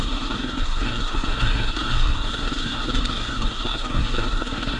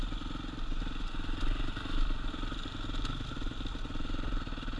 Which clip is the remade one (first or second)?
first